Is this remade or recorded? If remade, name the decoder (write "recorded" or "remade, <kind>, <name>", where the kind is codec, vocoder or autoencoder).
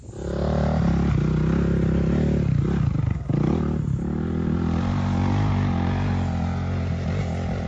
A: recorded